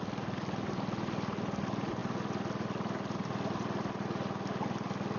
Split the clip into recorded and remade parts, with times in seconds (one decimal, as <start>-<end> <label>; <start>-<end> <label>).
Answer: 0.0-5.2 recorded